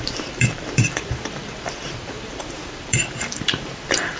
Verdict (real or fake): fake